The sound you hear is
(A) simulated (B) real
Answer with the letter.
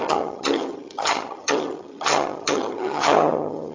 A